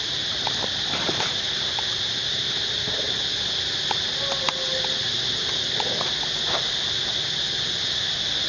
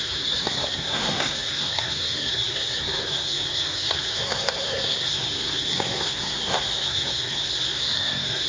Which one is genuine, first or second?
first